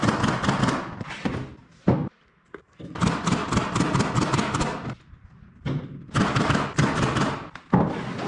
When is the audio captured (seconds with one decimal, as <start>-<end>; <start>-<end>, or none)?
0.0-8.3